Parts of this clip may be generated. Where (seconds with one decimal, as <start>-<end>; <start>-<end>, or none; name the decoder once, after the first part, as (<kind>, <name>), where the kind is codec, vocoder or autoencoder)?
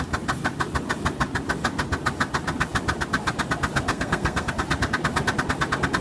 3.9-4.5 (codec, SNAC)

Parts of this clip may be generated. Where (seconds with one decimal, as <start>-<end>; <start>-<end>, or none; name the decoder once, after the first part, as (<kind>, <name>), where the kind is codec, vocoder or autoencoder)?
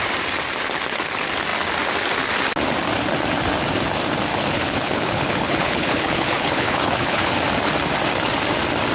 4.3-7.3 (codec, HILCodec)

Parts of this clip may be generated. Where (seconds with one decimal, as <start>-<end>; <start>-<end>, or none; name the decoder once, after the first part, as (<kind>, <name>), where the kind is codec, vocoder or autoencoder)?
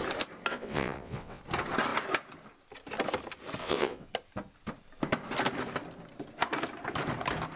0.5-1.4 (vocoder, WaveNeXt); 3.6-4.1